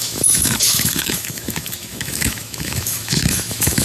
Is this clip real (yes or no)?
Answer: no